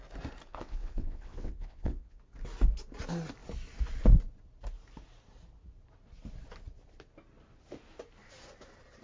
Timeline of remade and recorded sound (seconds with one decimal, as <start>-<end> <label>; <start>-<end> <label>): 0.0-0.5 recorded; 0.5-2.2 remade; 2.2-9.0 recorded